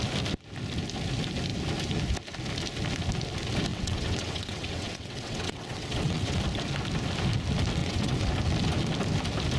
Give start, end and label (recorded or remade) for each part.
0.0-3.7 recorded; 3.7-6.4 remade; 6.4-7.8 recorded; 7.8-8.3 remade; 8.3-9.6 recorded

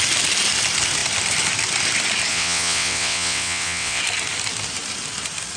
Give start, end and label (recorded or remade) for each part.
0.0-2.3 recorded; 2.3-4.0 remade; 4.0-5.6 recorded

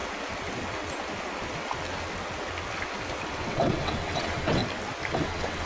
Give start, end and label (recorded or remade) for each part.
0.0-3.4 recorded; 3.4-4.6 remade; 4.6-5.1 recorded; 5.1-5.7 remade

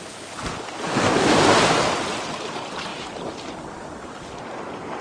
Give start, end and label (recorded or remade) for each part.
0.0-5.0 recorded

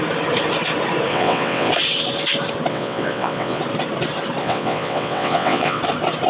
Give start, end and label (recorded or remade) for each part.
0.0-1.1 recorded; 1.1-1.7 remade; 1.7-2.7 recorded; 2.7-3.6 remade; 3.6-4.4 recorded; 4.4-5.8 remade; 5.8-6.3 recorded

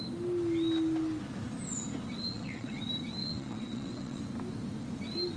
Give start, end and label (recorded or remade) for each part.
0.0-2.2 recorded; 2.2-2.8 remade; 2.8-3.2 recorded; 3.2-4.2 remade; 4.2-5.4 recorded

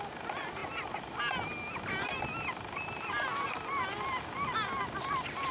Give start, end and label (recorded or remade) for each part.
0.0-5.5 recorded

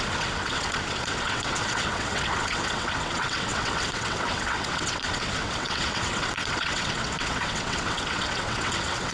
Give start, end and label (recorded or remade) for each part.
0.0-9.1 remade